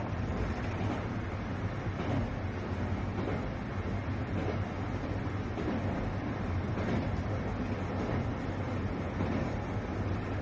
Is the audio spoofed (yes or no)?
no